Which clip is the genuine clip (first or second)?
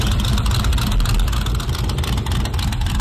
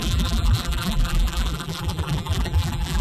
first